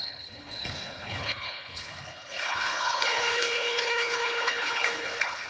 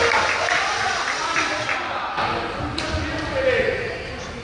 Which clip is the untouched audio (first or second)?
second